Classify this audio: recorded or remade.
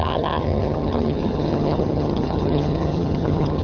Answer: remade